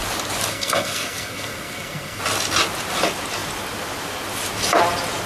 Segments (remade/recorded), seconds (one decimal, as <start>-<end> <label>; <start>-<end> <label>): 0.0-0.5 recorded; 0.5-2.2 remade; 2.2-5.3 recorded